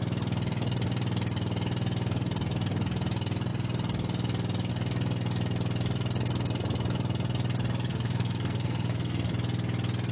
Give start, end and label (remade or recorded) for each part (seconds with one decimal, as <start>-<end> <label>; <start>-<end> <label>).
0.0-7.9 recorded; 7.9-9.3 remade; 9.3-10.1 recorded